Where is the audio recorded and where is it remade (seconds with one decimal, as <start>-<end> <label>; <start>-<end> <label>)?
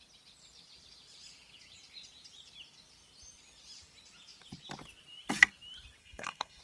0.0-6.0 recorded; 6.0-6.6 remade